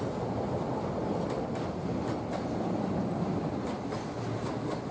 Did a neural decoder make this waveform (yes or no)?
no